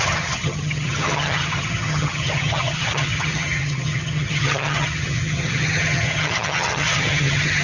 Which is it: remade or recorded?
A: remade